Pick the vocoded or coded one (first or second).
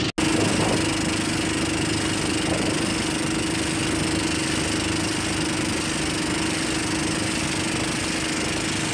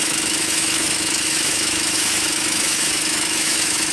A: second